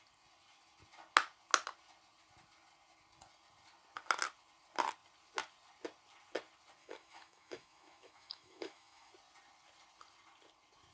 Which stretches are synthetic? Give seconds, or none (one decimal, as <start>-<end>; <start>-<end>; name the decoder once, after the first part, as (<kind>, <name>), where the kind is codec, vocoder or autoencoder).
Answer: 6.8-9.1 (autoencoder, DAC-VAE)